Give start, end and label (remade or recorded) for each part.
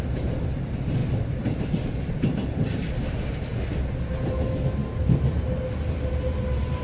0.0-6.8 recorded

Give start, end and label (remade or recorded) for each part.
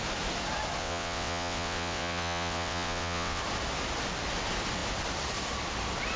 0.0-0.8 recorded; 0.8-3.4 remade; 3.4-6.2 recorded